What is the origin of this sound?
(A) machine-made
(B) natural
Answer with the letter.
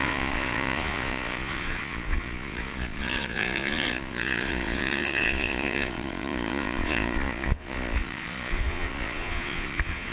A